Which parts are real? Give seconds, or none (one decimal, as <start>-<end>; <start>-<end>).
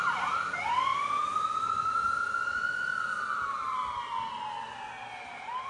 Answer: 0.0-5.7